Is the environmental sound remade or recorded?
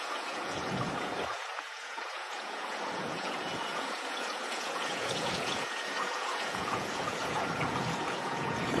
remade